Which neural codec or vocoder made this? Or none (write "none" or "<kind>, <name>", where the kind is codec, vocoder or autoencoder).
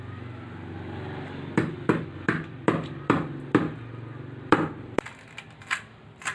vocoder, BigVGAN v2